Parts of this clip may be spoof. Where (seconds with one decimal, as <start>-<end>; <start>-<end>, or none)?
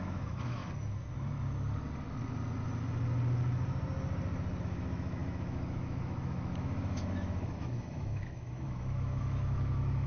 0.0-0.6; 4.6-10.1